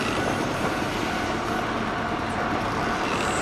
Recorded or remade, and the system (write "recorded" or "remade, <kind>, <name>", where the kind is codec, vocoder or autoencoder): recorded